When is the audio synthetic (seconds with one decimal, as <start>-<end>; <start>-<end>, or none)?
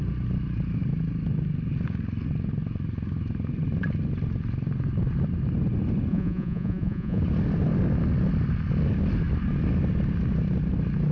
6.1-7.2